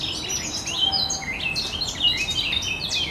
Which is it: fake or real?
real